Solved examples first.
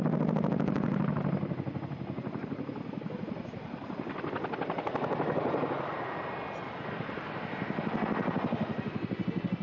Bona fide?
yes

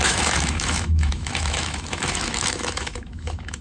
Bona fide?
no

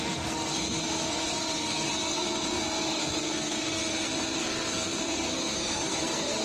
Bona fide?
no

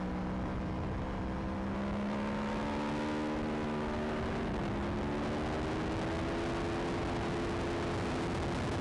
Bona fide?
yes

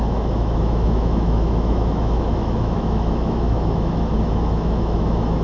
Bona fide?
no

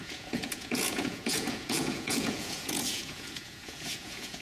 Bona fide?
no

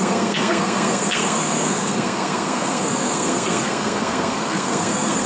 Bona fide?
no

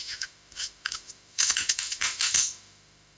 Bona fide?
no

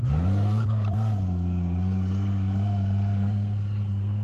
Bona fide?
no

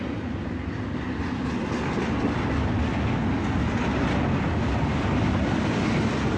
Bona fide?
yes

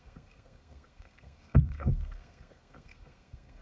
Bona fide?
no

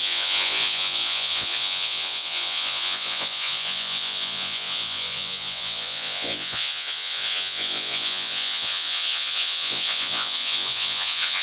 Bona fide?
no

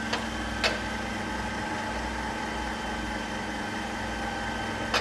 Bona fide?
yes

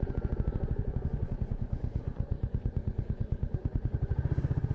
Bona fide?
no